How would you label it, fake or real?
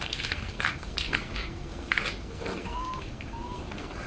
fake